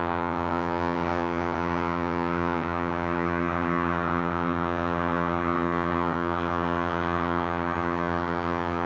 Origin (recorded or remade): remade